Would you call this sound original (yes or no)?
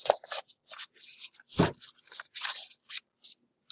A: yes